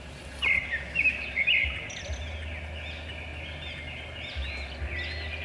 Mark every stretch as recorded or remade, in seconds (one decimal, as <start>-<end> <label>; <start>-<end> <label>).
0.0-5.4 recorded

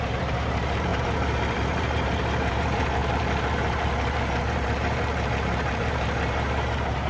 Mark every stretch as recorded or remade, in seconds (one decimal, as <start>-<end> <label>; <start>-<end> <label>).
0.0-7.1 remade

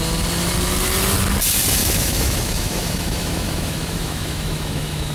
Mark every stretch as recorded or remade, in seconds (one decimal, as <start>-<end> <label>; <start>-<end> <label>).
0.0-1.8 recorded; 1.8-5.1 remade

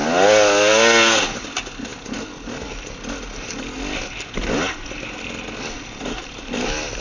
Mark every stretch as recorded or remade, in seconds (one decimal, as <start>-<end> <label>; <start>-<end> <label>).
0.0-7.0 recorded

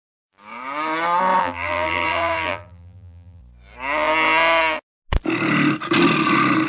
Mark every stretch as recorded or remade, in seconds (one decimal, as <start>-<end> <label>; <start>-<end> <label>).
0.0-1.4 recorded; 1.4-3.4 remade; 3.4-6.7 recorded

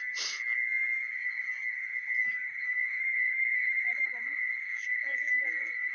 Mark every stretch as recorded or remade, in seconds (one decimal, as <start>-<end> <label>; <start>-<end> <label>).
0.0-2.2 recorded; 2.2-5.9 remade